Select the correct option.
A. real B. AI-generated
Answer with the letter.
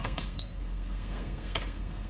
B